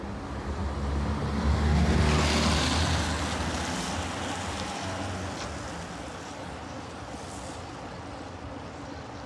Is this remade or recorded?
recorded